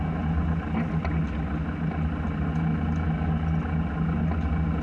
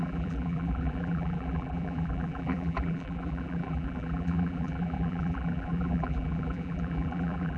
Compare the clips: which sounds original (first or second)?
first